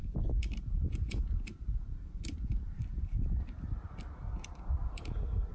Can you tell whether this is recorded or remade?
recorded